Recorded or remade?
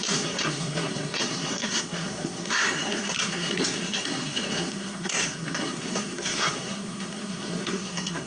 remade